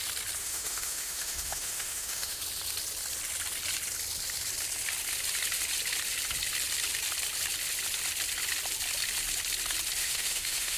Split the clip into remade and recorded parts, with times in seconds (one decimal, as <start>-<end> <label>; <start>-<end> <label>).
0.0-0.4 recorded; 0.4-2.4 remade; 2.4-10.0 recorded; 10.0-10.8 remade